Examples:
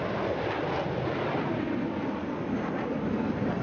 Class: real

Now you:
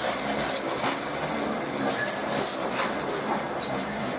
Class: real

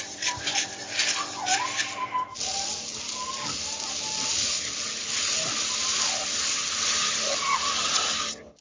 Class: real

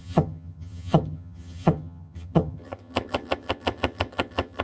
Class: fake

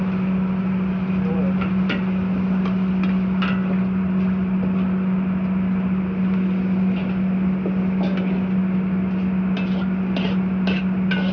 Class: real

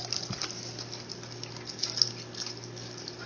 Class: real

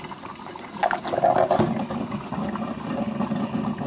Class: real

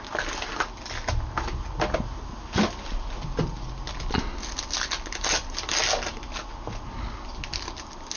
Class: real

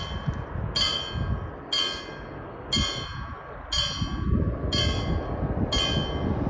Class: real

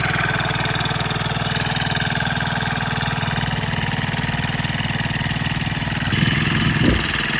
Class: real